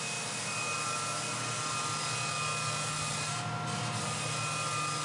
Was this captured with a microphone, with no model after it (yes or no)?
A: yes